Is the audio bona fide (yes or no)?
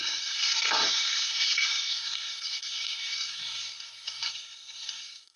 no